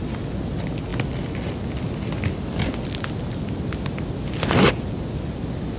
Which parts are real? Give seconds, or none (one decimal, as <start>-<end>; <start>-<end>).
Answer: 0.0-5.8

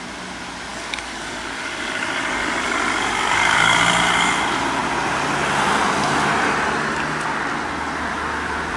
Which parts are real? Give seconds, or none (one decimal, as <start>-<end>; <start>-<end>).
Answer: 0.0-0.7; 3.8-8.8

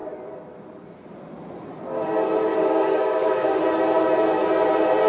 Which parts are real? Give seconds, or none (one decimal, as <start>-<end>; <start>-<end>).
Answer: 0.0-2.5; 3.6-5.1

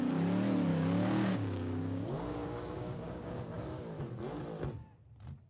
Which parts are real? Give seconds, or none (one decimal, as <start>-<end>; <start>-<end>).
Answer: 0.0-0.7; 4.0-5.5

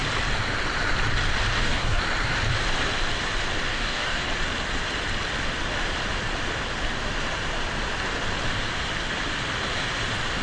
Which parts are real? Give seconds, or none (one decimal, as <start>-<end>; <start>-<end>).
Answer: 0.0-1.5; 2.0-3.7; 4.3-10.4

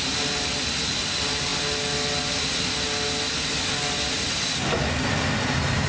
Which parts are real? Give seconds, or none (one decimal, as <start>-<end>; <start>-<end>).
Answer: 0.0-5.9